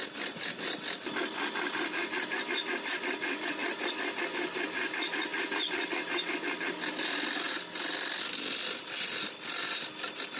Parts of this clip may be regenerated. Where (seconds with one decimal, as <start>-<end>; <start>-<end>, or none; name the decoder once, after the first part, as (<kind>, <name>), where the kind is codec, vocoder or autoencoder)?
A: none